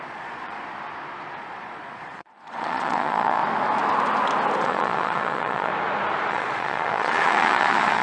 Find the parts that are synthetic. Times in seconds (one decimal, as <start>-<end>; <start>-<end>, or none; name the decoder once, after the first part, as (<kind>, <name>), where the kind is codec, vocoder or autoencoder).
0.0-0.6 (vocoder, Vocos); 1.4-3.4; 4.6-5.7; 6.3-8.0